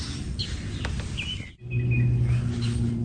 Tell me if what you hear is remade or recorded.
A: recorded